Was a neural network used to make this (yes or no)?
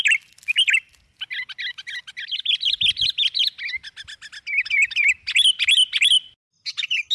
no